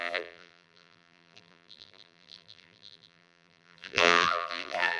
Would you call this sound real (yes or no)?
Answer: no